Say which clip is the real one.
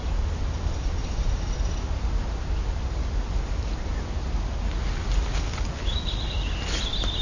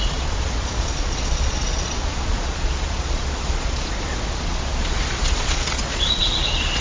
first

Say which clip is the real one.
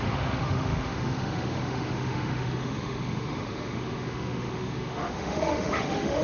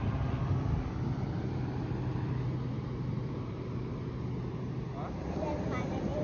second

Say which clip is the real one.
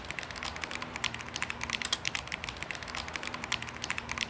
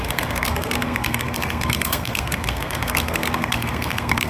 first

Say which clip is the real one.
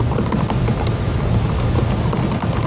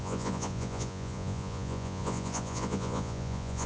first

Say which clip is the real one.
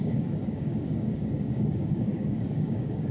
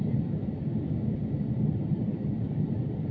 second